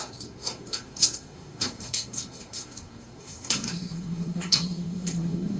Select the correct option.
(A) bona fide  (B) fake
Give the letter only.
B